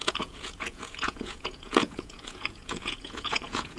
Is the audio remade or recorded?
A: remade